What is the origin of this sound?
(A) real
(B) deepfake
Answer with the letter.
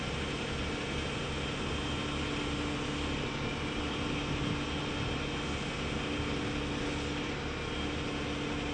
A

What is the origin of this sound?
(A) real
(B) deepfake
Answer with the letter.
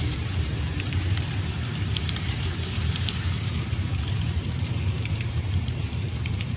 B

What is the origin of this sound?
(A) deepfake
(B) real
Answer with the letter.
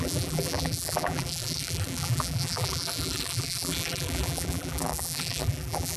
A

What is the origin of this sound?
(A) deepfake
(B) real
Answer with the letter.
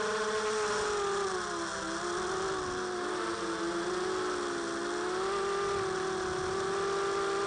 B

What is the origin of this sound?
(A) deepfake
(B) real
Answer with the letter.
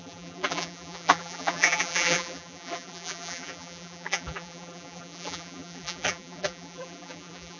A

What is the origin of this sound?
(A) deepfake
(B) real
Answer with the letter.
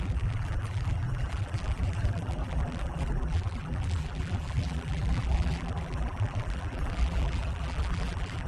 A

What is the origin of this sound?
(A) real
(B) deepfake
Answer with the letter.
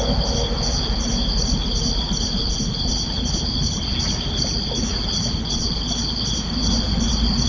A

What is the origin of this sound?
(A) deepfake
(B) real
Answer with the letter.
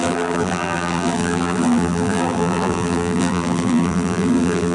A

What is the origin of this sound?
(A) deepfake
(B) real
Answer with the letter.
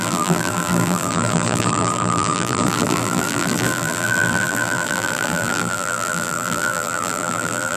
A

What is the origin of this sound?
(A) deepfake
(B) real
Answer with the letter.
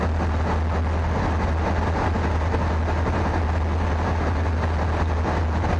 B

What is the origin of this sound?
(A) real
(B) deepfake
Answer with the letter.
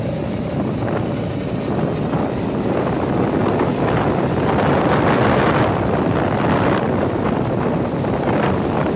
B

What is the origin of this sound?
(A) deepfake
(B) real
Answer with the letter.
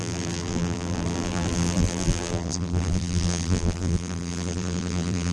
A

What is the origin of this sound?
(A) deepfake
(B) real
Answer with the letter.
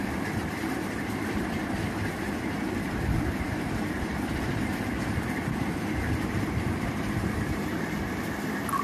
A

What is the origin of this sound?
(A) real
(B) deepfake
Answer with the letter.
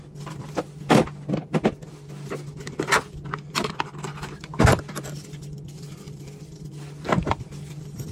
A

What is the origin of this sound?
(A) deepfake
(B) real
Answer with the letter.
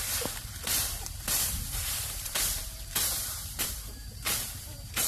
A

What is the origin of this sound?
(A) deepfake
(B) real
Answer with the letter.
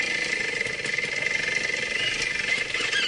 B